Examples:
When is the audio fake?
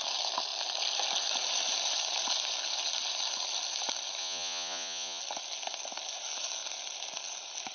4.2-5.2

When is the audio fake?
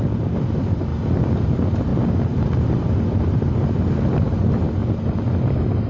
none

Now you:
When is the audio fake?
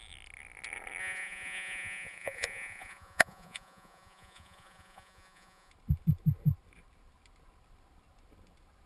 1.0-5.7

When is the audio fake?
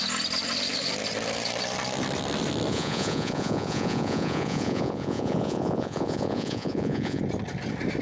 2.7-7.2